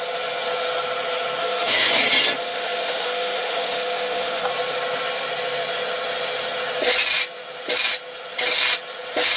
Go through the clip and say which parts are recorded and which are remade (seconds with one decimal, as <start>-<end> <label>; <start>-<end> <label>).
0.0-1.4 recorded; 1.4-1.9 remade; 1.9-2.4 recorded; 2.4-4.5 remade; 4.5-9.4 recorded